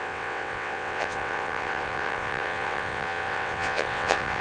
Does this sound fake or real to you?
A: fake